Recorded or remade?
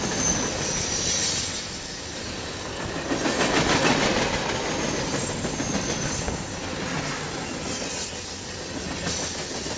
recorded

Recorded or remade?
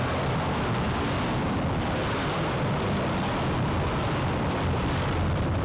remade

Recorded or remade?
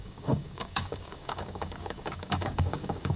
remade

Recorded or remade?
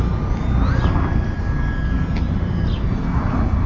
recorded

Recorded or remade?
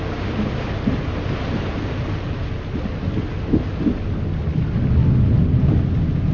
recorded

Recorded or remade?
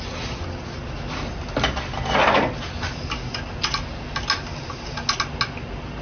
recorded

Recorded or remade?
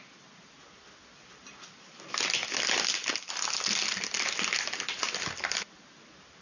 recorded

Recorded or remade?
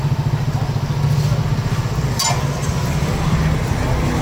recorded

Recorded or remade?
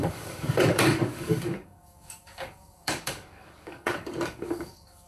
remade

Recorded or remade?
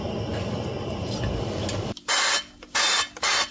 recorded